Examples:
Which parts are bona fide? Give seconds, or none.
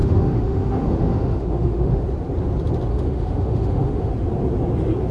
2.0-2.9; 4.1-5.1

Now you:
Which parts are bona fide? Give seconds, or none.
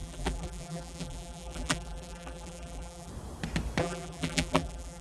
3.1-3.8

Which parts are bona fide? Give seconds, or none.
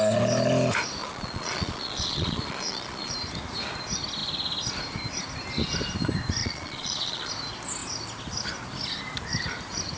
0.0-1.0; 3.1-6.4; 7.3-10.0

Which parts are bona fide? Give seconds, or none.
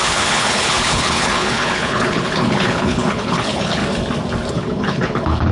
3.8-4.5